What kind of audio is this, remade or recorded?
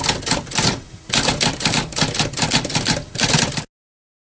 recorded